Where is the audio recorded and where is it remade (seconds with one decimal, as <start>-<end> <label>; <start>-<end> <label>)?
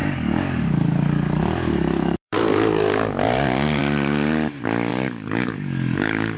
0.0-3.8 remade; 3.8-4.9 recorded; 4.9-6.4 remade